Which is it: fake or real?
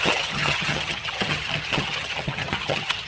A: fake